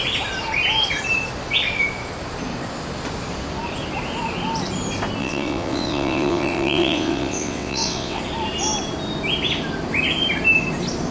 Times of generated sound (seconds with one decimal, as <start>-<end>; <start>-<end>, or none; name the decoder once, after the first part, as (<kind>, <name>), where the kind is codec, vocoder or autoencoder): 5.2-8.2 (vocoder, WaveNeXt)